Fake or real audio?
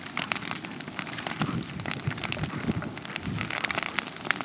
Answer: real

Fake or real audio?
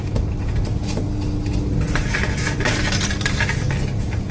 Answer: real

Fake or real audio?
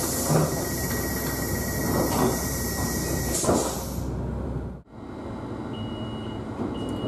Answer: real